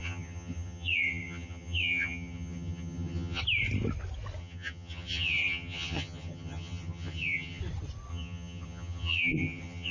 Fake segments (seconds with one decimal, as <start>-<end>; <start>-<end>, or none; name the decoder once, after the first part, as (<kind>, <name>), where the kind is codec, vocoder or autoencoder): 0.0-3.4 (vocoder, HiFi-GAN); 4.4-7.6; 8.1-9.9

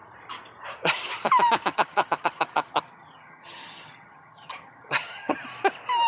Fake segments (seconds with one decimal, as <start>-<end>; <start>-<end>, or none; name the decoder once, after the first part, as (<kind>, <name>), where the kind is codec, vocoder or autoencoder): 1.7-5.4 (vocoder, HiFi-GAN)

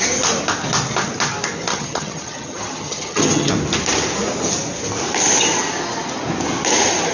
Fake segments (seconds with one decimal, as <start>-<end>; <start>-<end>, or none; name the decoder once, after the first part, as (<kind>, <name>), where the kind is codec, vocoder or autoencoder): 1.7-3.5 (vocoder, HiFi-GAN)

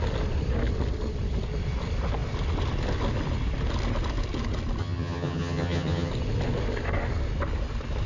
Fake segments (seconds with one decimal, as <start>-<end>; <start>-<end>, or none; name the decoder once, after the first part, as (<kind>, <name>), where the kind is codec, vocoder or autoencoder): 4.8-6.1 (vocoder, HiFi-GAN)

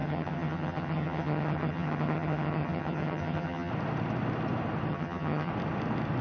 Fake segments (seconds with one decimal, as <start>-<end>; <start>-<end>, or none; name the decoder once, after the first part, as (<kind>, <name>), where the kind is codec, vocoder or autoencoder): 0.0-3.7 (vocoder, HiFi-GAN); 4.9-5.5